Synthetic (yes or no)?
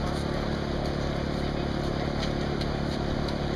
no